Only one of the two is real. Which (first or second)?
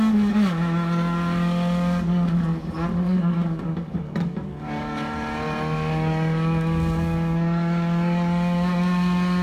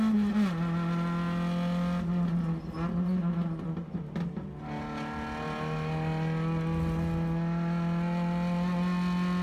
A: second